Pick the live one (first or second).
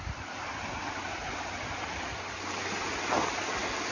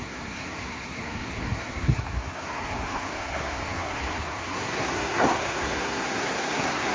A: first